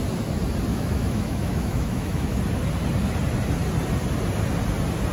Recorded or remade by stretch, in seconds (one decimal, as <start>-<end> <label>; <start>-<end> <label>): 0.0-0.7 recorded; 0.7-2.4 remade; 2.4-5.1 recorded

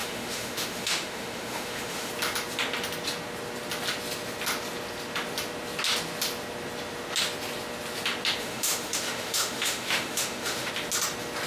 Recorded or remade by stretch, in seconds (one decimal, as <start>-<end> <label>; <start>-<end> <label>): 0.0-2.1 remade; 2.1-8.4 recorded; 8.4-10.7 remade; 10.7-11.5 recorded

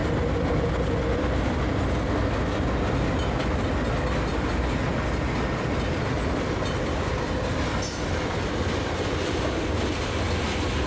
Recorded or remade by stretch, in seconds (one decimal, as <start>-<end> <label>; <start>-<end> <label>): 0.0-10.9 recorded

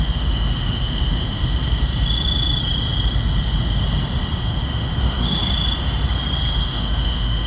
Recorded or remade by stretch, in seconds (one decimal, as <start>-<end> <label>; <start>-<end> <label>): 0.0-1.4 remade; 1.4-4.4 recorded; 4.4-5.4 remade; 5.4-6.5 recorded; 6.5-7.5 remade